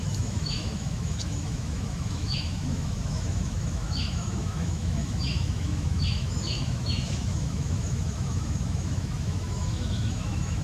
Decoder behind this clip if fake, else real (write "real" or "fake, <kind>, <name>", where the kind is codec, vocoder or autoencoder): fake, autoencoder, DAC-VAE